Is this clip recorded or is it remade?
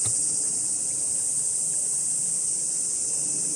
recorded